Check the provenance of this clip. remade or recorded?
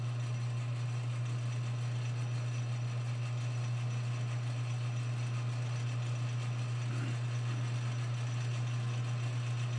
recorded